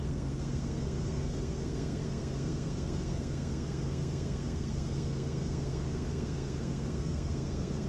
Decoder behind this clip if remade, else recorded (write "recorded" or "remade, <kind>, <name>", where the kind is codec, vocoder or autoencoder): remade, codec, SNAC